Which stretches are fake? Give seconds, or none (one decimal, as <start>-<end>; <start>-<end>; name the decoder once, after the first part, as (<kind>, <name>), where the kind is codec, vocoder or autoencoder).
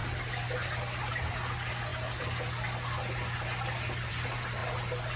none